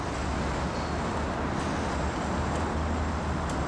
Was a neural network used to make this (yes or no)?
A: no